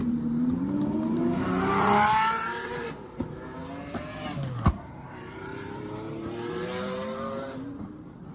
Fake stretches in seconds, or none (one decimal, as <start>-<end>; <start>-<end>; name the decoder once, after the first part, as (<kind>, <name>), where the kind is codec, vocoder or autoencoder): 0.0-3.6 (vocoder, BigVGAN v2); 4.7-8.3